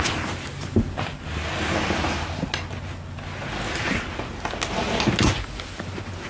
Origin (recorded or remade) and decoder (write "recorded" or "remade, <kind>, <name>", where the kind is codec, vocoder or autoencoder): recorded